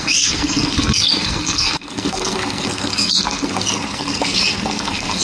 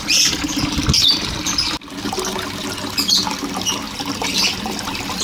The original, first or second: second